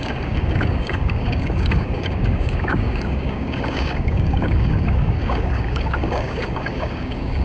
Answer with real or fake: fake